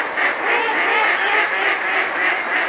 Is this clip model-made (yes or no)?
no